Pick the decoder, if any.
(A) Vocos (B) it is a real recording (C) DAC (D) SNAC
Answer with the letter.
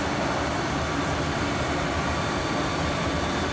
B